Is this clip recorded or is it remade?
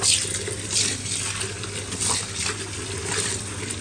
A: recorded